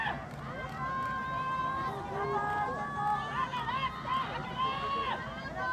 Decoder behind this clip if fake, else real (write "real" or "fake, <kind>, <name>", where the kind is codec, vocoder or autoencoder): real